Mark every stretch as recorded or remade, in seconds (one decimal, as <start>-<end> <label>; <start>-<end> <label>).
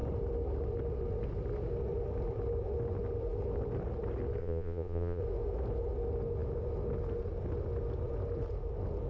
0.0-4.4 recorded; 4.4-5.2 remade; 5.2-9.1 recorded